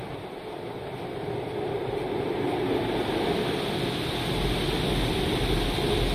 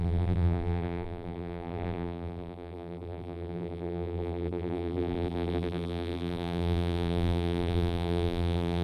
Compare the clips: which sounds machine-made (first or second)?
second